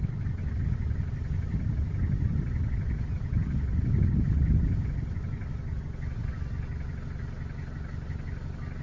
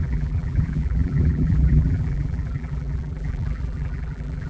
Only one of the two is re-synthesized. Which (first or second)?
second